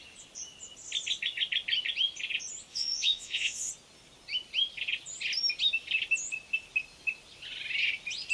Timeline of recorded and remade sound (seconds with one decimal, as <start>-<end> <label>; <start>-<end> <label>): 0.0-2.7 recorded; 2.7-3.7 remade; 3.7-8.3 recorded